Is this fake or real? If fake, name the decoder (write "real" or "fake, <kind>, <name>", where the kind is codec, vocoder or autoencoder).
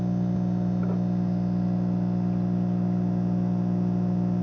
real